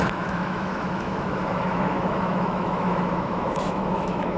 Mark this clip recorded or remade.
remade